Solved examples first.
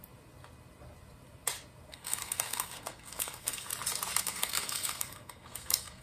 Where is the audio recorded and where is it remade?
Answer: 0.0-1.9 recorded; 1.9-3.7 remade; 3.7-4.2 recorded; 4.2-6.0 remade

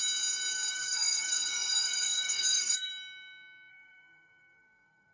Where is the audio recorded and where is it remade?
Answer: 0.0-0.7 recorded; 0.7-2.9 remade; 2.9-3.7 recorded; 3.7-5.1 remade

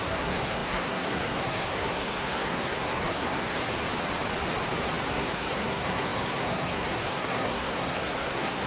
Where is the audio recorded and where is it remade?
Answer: 0.0-3.6 remade; 3.6-5.1 recorded; 5.1-8.7 remade

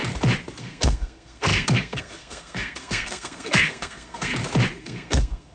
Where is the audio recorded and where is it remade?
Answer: 0.0-0.6 recorded; 0.6-4.3 remade; 4.3-4.8 recorded; 4.8-5.5 remade